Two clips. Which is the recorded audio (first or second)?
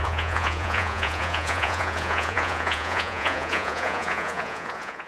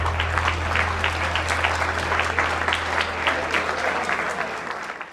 second